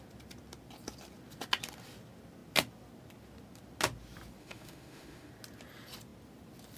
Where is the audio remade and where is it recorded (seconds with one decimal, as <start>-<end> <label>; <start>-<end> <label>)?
0.0-4.4 recorded; 4.4-5.3 remade; 5.3-6.8 recorded